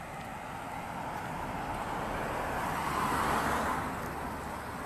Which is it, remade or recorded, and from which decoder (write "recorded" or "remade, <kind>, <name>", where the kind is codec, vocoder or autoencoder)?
recorded